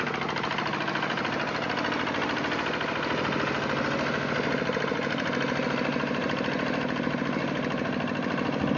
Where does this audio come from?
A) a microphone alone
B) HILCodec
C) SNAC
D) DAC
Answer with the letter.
A